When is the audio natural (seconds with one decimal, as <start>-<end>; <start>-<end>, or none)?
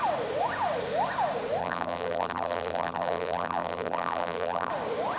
0.0-1.6; 4.7-5.2